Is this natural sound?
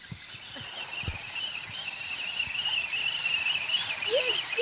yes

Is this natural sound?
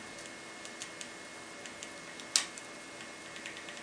yes